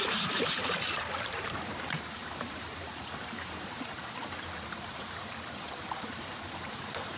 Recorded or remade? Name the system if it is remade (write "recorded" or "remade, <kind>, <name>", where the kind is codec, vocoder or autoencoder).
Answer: remade, vocoder, BigVGAN v2